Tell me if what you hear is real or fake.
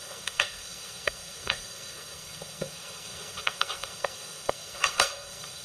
fake